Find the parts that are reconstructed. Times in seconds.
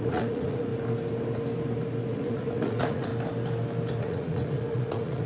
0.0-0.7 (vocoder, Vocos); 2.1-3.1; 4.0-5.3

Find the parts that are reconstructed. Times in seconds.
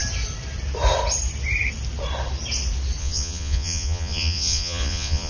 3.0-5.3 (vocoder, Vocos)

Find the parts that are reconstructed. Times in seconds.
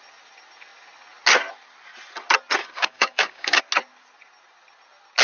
2.6-3.6 (codec, DAC)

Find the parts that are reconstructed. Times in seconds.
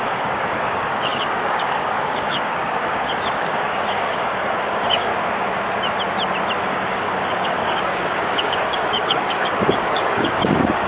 0.0-5.1 (codec, DAC); 6.6-10.9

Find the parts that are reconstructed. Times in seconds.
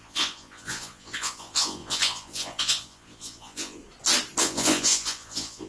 0.0-3.8 (vocoder, Vocos); 4.4-5.7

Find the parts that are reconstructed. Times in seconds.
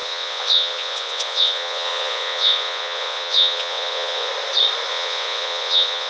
0.0-4.3 (vocoder, WaveNeXt); 4.9-6.1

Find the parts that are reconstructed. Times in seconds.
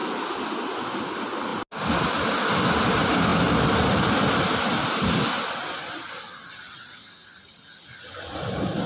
none